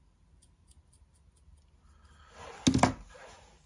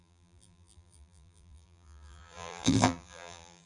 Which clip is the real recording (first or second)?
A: first